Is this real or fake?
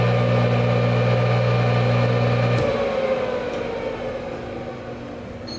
real